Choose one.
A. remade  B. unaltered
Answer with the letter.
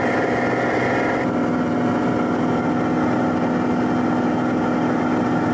B